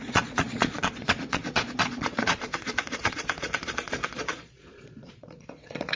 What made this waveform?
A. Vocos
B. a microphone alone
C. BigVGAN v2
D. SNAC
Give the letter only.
A